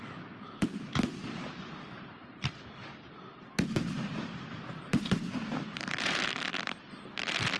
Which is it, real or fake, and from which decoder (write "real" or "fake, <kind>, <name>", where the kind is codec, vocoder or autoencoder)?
fake, vocoder, BigVGAN v2